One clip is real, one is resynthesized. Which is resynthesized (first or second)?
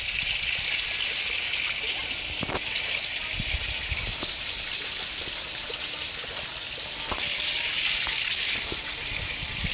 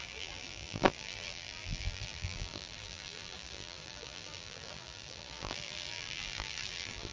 second